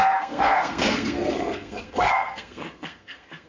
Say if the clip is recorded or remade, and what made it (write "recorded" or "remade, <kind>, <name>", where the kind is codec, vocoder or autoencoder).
remade, codec, SNAC